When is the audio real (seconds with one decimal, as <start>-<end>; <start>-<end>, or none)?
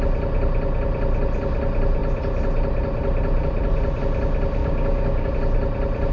0.0-4.6; 5.3-6.1